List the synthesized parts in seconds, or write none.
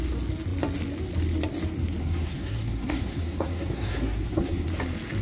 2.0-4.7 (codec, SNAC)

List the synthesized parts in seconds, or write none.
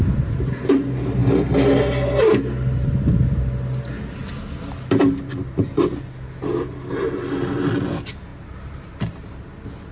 none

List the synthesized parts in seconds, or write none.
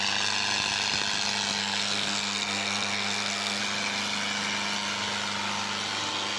1.6-3.6 (codec, SNAC)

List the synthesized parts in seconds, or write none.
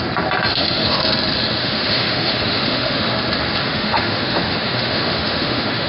0.5-1.0 (autoencoder, DAC-VAE); 1.6-3.1; 3.6-5.9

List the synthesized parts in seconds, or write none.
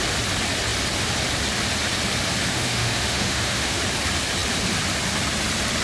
2.5-3.8 (autoencoder, DAC-VAE)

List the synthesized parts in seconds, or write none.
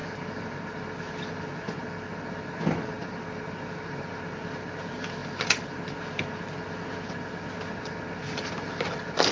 none